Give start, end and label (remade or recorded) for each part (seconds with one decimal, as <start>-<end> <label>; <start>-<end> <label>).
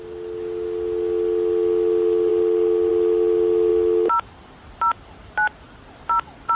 0.0-6.5 recorded